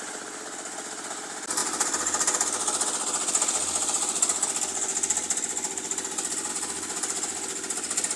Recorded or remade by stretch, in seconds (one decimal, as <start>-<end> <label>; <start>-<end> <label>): 0.0-8.2 recorded